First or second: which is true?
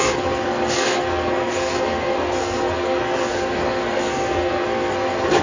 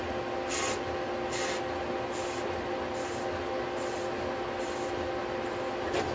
second